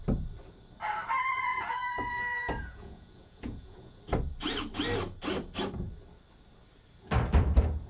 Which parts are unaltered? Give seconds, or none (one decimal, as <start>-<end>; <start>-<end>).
0.0-1.5; 4.0-7.9